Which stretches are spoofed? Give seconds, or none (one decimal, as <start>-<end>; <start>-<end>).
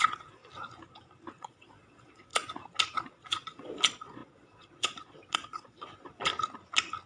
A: 0.0-0.4; 1.4-2.3; 3.0-6.3